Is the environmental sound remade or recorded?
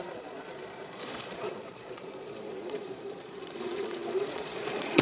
remade